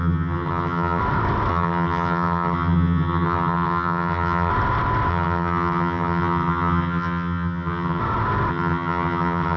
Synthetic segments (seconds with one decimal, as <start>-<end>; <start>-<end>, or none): 0.0-1.0; 1.5-4.5; 5.1-8.0; 8.5-9.6